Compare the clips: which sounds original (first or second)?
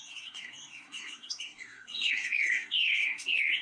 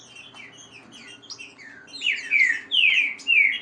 second